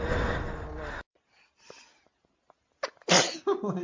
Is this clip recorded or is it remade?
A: recorded